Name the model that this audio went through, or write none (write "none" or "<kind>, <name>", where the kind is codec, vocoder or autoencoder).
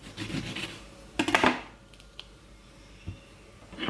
none